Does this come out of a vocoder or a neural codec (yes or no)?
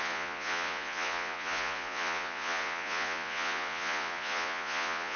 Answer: yes